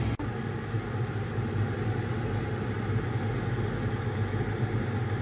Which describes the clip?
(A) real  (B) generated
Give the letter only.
A